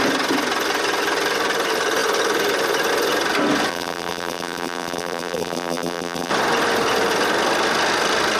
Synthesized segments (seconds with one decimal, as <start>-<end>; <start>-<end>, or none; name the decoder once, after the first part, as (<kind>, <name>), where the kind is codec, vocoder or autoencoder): 3.7-6.3 (vocoder, BigVGAN v2)